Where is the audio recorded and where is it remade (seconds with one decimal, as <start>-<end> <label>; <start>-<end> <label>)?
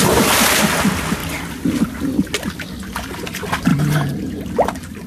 0.0-5.1 recorded